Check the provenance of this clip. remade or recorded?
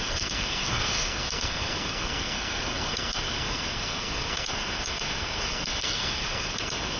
remade